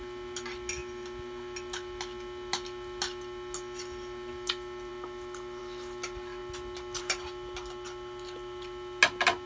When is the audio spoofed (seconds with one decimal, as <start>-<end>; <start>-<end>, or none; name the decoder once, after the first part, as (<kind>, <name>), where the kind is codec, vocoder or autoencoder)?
none